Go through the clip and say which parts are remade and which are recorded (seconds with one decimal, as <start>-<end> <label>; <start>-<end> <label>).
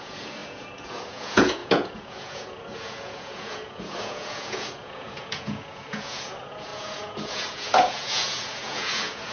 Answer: 0.0-9.3 remade